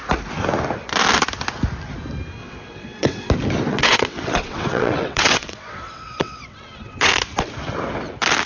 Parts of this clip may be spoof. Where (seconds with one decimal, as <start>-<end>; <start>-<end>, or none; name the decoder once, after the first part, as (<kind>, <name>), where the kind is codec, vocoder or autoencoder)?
2.4-3.3 (vocoder, WaveNeXt); 3.7-7.1